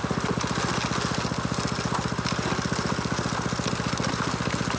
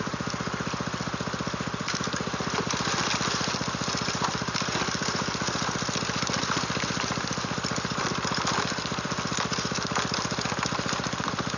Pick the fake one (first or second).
second